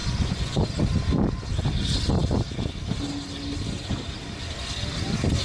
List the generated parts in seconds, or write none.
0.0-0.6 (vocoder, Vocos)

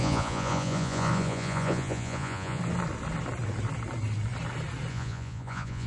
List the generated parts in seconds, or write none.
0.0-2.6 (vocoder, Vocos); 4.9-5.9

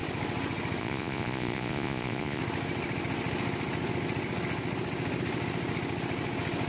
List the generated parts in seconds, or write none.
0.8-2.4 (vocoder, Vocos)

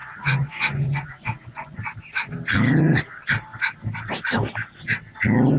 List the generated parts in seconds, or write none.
0.0-1.8 (vocoder, Vocos)

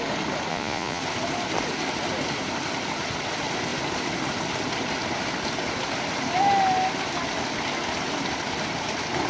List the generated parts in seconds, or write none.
0.5-1.0 (vocoder, Vocos)

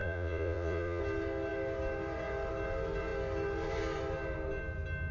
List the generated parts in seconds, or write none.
0.0-1.0 (vocoder, Vocos)

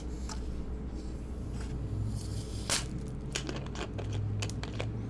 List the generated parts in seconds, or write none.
none

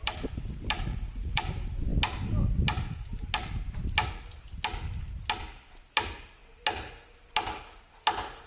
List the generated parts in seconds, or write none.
0.9-1.4 (vocoder, Vocos)